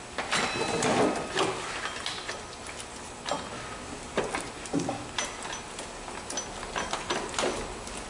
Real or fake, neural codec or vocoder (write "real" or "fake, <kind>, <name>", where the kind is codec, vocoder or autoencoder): real